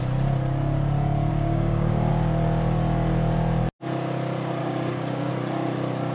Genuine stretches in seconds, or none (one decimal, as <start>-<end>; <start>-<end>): 0.0-1.3; 2.1-4.6; 5.3-6.1